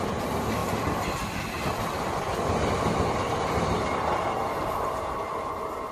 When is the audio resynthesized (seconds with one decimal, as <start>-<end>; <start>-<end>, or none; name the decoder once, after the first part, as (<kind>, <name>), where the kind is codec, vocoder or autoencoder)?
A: none